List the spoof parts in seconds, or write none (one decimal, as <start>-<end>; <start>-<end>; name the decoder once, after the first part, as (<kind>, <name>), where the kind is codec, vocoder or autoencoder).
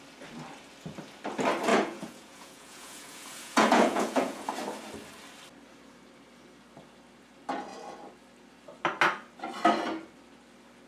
1.7-4.5 (vocoder, Vocos)